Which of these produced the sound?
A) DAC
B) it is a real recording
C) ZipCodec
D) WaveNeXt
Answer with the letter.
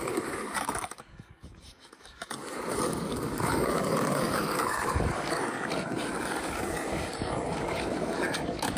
A